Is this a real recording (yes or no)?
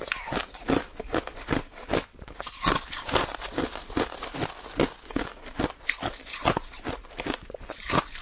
yes